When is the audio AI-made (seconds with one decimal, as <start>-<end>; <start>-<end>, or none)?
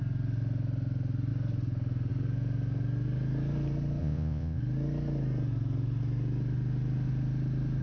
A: 4.0-4.6